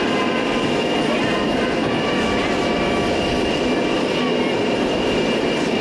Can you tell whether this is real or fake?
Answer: real